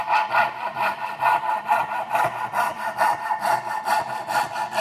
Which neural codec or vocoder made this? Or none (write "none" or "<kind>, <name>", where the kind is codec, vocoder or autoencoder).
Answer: vocoder, BigVGAN v2